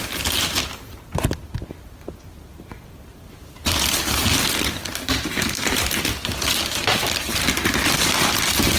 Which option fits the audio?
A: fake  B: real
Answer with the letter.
B